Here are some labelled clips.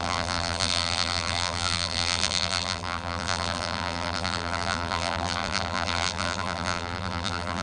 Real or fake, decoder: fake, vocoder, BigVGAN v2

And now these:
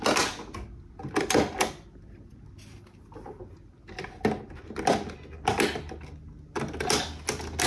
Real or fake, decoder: real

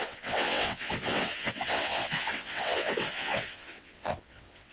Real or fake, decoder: fake, vocoder, WaveNeXt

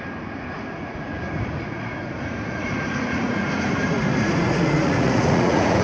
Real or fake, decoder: fake, vocoder, Vocos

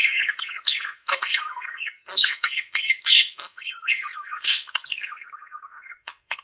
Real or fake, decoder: fake, codec, SNAC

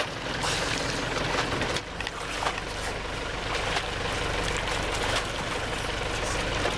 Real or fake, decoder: real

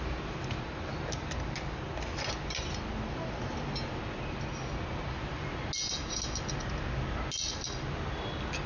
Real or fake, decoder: real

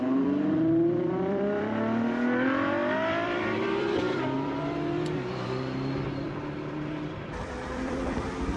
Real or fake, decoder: fake, vocoder, BigVGAN v2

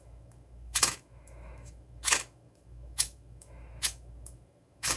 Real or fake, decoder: fake, autoencoder, DAC-VAE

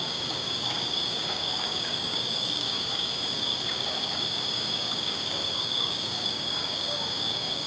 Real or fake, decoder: fake, codec, DAC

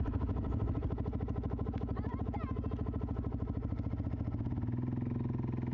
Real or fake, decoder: real